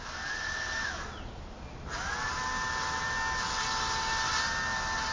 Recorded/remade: recorded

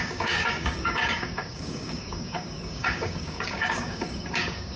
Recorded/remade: remade